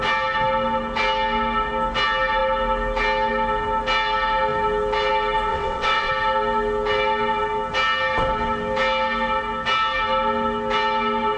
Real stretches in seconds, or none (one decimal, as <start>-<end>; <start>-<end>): 0.0-5.5; 6.1-11.4